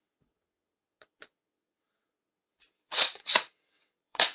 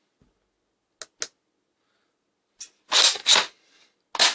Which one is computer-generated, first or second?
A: first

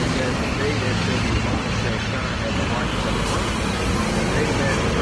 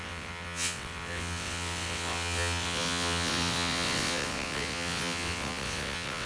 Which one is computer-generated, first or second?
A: second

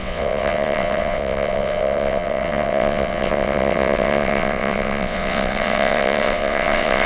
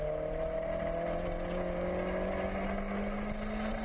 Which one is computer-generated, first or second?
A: first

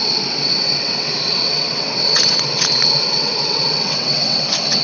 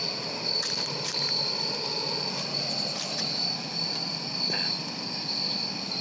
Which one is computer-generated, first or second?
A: first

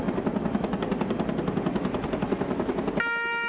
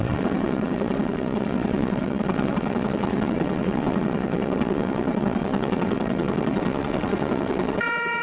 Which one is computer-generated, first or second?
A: second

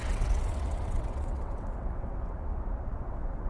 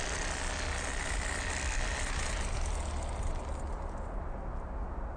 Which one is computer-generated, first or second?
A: first